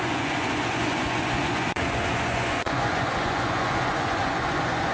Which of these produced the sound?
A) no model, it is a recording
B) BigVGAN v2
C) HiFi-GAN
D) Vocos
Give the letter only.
D